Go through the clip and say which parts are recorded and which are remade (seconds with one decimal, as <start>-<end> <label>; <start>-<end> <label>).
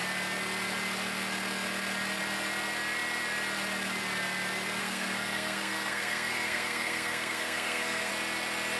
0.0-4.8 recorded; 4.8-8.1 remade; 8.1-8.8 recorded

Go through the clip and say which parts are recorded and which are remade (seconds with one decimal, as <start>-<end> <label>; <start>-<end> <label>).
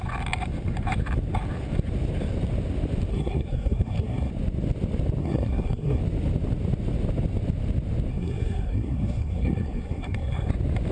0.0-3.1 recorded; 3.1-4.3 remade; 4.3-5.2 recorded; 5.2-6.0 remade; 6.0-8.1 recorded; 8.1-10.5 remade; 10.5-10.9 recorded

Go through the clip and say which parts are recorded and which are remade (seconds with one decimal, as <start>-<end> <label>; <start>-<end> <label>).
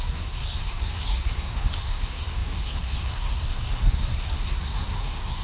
0.0-5.4 remade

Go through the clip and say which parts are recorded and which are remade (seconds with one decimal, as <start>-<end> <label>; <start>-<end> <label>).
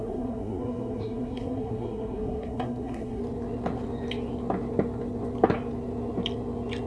0.0-3.2 remade; 3.2-6.9 recorded